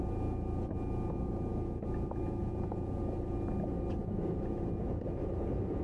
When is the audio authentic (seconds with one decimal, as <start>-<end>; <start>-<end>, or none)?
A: 0.0-2.4; 3.0-5.8